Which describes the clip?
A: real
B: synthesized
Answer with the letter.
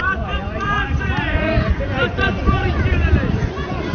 B